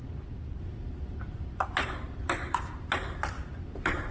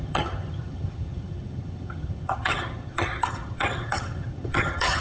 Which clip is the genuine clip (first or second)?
first